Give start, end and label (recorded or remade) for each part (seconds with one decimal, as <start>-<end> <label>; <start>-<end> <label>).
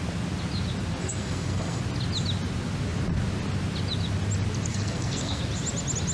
0.0-1.0 recorded; 1.0-1.8 remade; 1.8-4.7 recorded; 4.7-5.4 remade; 5.4-6.1 recorded